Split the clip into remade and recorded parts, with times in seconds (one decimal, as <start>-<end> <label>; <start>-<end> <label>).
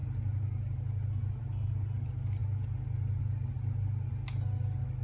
0.0-5.0 recorded